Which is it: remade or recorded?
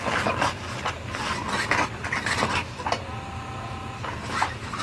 recorded